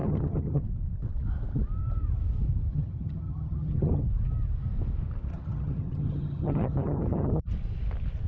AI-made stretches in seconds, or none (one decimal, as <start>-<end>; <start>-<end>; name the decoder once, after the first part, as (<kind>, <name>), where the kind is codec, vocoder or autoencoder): 0.0-0.6 (vocoder, HiFi-GAN); 2.7-4.0; 5.3-7.5